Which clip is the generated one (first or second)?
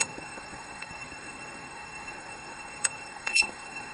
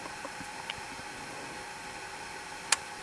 first